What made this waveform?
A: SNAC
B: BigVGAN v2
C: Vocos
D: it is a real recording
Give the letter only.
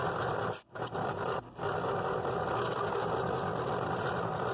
B